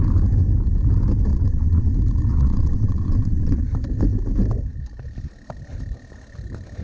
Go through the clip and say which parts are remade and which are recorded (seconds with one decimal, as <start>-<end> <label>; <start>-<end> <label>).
0.0-1.3 recorded; 1.3-1.9 remade; 1.9-2.3 recorded; 2.3-3.6 remade; 3.6-6.8 recorded